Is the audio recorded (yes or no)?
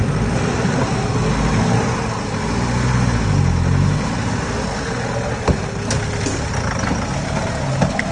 yes